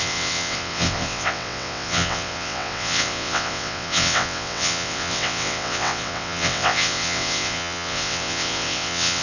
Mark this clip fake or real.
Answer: fake